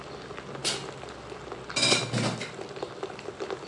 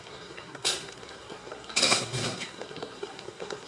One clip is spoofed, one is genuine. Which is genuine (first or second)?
first